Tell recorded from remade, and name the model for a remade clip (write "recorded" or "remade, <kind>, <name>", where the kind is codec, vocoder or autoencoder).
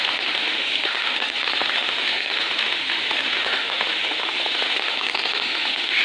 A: remade, autoencoder, DAC-VAE